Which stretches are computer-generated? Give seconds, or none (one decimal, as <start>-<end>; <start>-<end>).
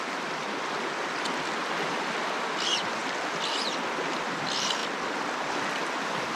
none